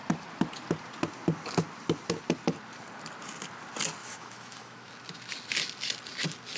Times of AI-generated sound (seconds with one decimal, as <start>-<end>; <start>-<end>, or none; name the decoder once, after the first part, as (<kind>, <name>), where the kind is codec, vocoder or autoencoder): 4.0-4.9 (autoencoder, DAC-VAE)